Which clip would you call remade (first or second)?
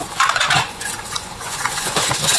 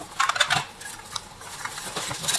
first